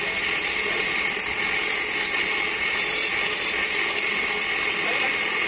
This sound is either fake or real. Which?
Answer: real